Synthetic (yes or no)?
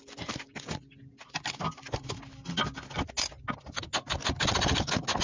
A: no